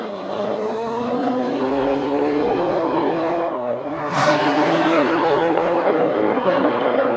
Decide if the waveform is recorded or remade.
remade